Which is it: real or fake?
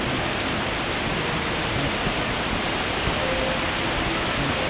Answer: real